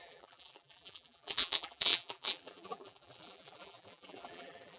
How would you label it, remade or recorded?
remade